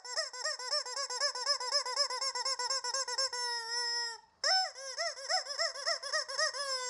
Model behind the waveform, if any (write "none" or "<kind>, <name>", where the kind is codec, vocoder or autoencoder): none